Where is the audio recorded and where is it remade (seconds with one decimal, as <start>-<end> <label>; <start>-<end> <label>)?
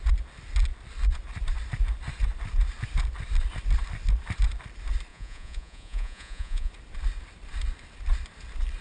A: 0.0-5.1 recorded; 5.1-6.7 remade; 6.7-8.8 recorded